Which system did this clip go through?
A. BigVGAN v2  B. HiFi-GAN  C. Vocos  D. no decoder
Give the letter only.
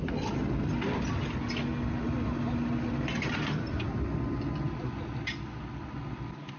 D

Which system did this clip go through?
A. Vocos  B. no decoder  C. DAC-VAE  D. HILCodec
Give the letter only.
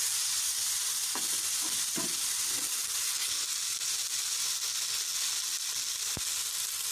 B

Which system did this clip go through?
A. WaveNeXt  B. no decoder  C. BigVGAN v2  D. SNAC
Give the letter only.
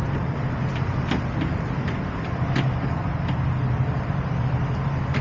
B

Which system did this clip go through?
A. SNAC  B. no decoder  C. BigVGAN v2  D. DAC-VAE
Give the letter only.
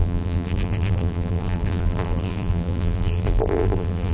C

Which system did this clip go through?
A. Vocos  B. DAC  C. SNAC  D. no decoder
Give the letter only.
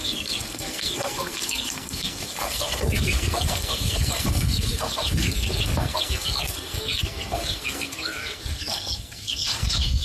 C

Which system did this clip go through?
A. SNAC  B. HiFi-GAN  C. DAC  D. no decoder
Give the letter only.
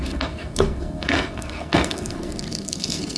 A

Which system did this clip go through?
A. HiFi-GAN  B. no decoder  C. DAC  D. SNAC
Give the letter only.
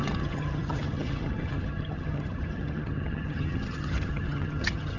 A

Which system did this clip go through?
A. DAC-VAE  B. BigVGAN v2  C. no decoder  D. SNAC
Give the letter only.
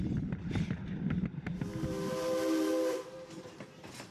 C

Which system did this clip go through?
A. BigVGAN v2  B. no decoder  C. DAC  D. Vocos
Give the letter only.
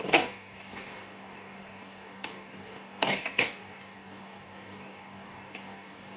C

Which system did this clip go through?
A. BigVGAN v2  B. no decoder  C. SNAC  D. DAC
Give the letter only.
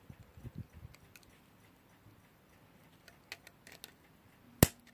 B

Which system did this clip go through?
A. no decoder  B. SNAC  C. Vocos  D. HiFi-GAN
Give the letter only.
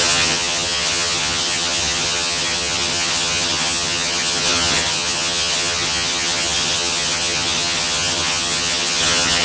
D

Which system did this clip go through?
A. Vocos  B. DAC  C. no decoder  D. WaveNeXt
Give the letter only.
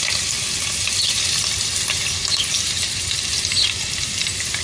C